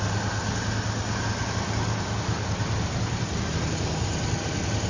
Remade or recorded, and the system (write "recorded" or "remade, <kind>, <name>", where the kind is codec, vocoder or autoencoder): recorded